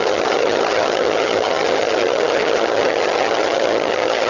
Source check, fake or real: fake